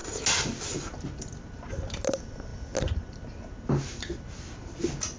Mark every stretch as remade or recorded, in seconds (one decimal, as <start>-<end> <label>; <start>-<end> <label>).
0.0-5.2 recorded